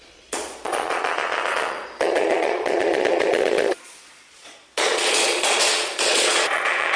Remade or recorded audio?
remade